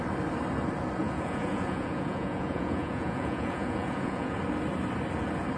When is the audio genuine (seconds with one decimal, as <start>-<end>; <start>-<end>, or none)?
0.0-1.0; 4.4-5.6